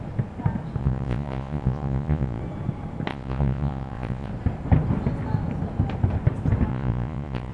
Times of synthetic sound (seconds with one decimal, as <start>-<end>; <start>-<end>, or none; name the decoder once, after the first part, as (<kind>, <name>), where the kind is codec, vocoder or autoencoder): 0.8-2.4 (vocoder, Vocos); 3.1-4.3; 6.7-7.5